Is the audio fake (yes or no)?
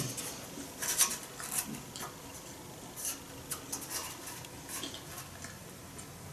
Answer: no